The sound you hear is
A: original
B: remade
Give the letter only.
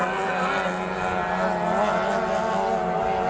A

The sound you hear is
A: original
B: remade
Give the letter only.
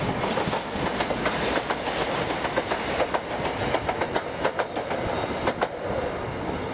A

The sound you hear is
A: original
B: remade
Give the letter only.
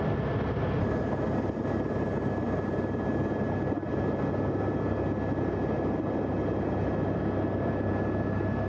A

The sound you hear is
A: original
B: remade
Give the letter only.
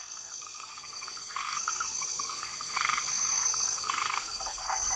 B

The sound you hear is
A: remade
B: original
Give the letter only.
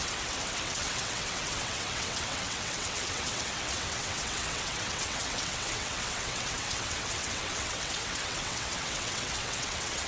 A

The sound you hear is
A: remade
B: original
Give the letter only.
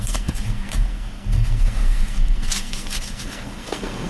A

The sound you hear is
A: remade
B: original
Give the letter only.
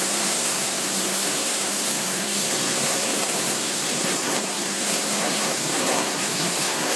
A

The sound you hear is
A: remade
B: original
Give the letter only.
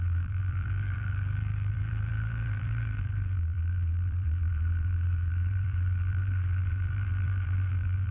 A